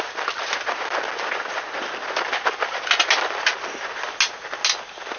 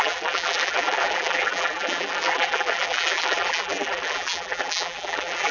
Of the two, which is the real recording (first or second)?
first